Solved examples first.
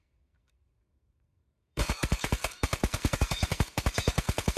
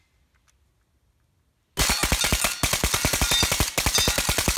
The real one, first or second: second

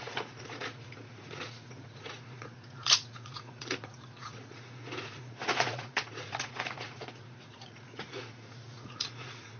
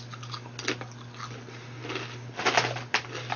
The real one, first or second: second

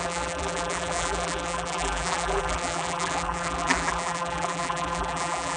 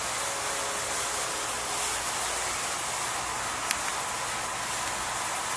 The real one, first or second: second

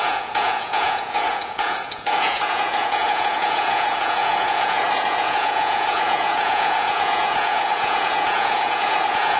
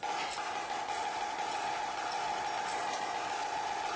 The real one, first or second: second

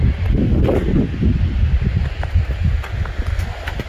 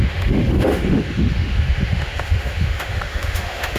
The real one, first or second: first